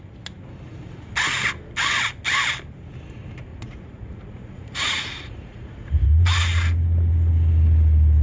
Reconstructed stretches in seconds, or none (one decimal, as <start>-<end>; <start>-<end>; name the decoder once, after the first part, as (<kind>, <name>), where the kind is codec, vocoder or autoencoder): 3.5-5.9 (vocoder, Vocos)